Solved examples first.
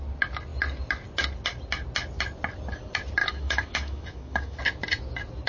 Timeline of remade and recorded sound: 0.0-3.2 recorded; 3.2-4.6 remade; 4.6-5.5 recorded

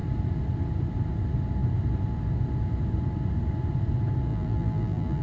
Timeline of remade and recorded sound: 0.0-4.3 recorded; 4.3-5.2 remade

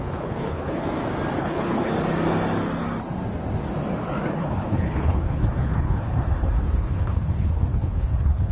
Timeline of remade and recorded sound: 0.0-0.8 remade; 0.8-1.4 recorded; 1.4-1.9 remade; 1.9-4.3 recorded; 4.3-8.5 remade

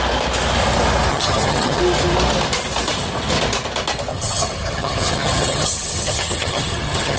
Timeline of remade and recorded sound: 0.0-1.1 recorded; 1.1-1.8 remade; 1.8-4.1 recorded; 4.1-7.2 remade

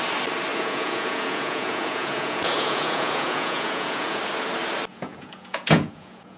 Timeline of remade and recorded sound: 0.0-0.5 recorded; 0.5-4.2 remade; 4.2-4.9 recorded; 4.9-6.4 remade

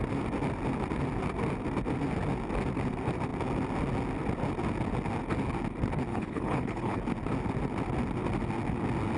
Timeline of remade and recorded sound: 0.0-6.1 recorded; 6.1-7.0 remade; 7.0-9.2 recorded

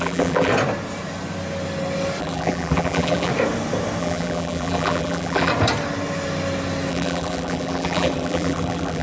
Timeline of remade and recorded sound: 0.0-0.5 remade; 0.5-2.2 recorded; 2.2-3.3 remade; 3.3-4.0 recorded; 4.0-5.5 remade; 5.5-6.9 recorded; 6.9-9.0 remade

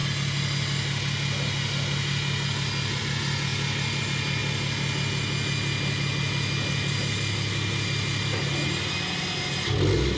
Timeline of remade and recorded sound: 0.0-10.2 recorded